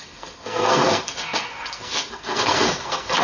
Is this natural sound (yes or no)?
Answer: no